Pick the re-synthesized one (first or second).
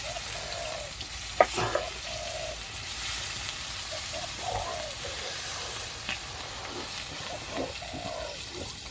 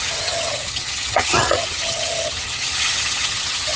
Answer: second